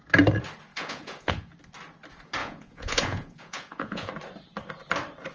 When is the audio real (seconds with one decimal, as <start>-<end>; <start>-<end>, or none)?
0.0-0.7; 1.5-2.4; 4.1-5.3